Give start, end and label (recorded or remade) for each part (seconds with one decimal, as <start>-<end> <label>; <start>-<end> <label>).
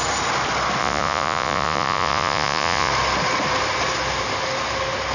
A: 0.0-0.8 recorded; 0.8-2.9 remade; 2.9-5.1 recorded